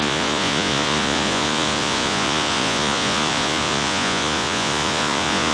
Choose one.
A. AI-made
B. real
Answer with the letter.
A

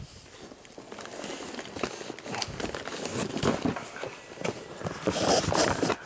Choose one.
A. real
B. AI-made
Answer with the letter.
A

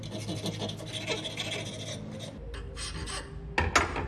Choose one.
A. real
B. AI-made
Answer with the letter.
A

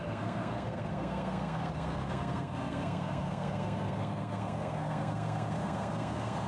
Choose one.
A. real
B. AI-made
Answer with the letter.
B